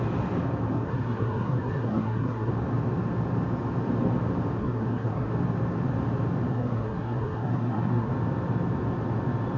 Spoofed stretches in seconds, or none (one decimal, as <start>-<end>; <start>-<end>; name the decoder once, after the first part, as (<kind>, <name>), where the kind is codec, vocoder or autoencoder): 0.7-2.5 (codec, SNAC); 4.6-5.3; 6.5-8.1